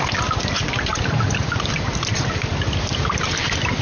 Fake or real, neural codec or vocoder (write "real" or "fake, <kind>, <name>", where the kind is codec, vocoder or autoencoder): real